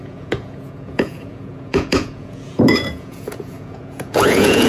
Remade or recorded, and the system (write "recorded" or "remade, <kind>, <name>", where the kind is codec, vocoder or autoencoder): remade, vocoder, Vocos